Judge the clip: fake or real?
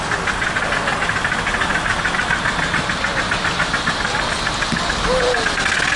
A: real